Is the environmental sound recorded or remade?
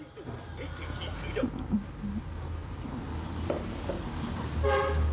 recorded